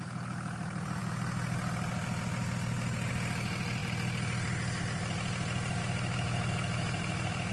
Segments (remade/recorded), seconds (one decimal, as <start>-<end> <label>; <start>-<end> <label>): 0.0-5.8 recorded; 5.8-7.5 remade